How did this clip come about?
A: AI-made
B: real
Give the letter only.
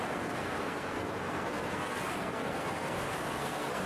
A